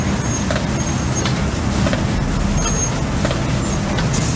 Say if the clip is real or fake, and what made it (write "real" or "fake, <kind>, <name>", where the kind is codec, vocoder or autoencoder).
real